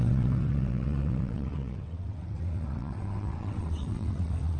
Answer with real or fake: fake